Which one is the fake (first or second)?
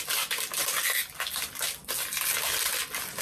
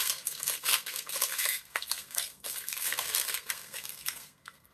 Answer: second